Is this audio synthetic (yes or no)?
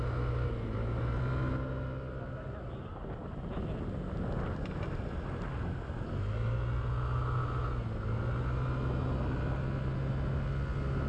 no